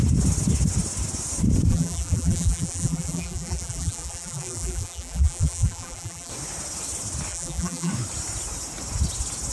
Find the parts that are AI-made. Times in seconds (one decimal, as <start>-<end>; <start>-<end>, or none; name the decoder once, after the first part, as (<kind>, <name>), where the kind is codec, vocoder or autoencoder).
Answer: 1.7-6.3 (vocoder, BigVGAN v2); 7.3-7.9